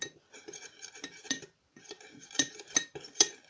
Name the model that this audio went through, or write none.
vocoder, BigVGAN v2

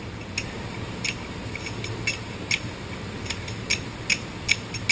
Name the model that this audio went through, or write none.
none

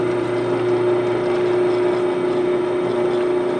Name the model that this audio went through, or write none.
none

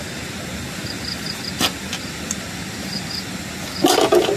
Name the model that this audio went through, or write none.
none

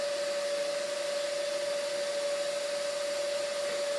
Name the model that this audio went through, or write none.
none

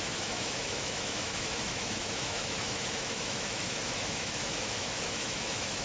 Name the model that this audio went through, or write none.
autoencoder, DAC-VAE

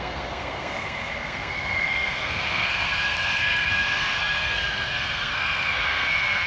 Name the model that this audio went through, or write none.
codec, SNAC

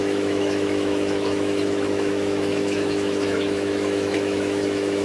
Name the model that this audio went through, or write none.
autoencoder, DAC-VAE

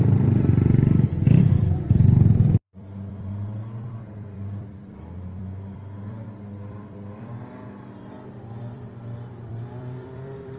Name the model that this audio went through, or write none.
vocoder, BigVGAN v2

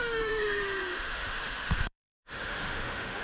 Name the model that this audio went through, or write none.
autoencoder, DAC-VAE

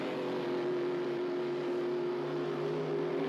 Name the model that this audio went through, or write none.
none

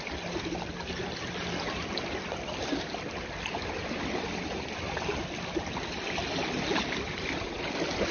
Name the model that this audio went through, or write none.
none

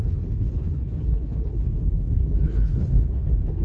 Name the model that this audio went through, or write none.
codec, HILCodec